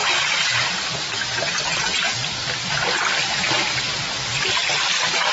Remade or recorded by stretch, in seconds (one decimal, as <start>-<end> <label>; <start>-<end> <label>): 0.0-5.3 recorded